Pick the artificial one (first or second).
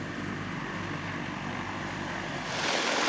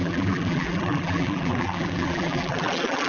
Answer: second